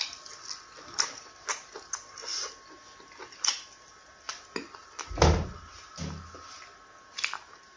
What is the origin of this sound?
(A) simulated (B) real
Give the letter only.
B